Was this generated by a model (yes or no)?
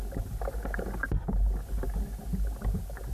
no